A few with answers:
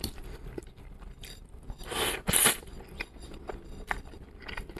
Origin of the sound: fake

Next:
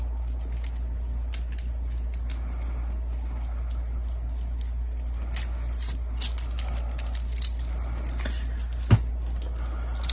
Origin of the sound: real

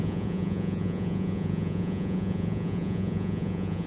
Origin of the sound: fake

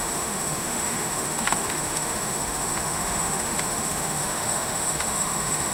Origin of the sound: fake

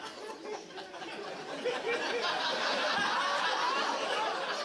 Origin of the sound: real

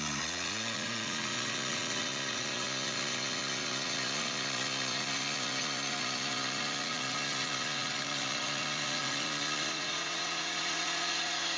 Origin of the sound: fake